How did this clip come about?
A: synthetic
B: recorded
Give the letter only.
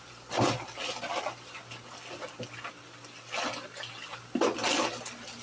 B